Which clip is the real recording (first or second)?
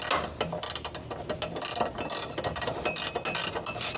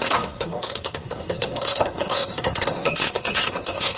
first